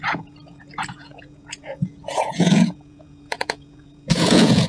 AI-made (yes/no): yes